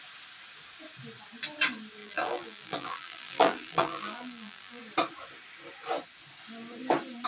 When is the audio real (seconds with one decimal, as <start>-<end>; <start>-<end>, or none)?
0.0-2.0; 4.8-7.3